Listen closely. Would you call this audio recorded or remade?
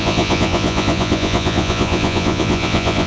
remade